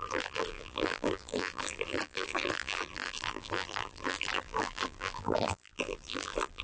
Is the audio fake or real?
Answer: fake